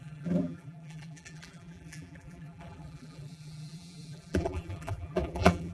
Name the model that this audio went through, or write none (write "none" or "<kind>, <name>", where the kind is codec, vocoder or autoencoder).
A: vocoder, BigVGAN v2